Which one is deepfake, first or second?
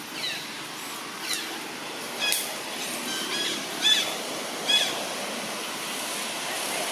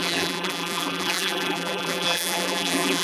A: second